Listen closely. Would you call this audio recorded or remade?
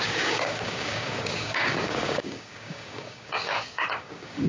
remade